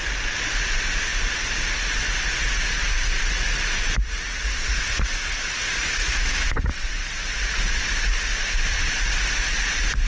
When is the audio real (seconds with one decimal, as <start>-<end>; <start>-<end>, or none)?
0.0-1.1; 1.8-2.8; 4.1-5.3; 6.1-8.3; 9.1-10.1